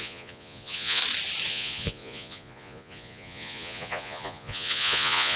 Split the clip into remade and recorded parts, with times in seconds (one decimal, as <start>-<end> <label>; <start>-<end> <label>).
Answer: 0.0-1.0 remade; 1.0-1.5 recorded; 1.5-5.4 remade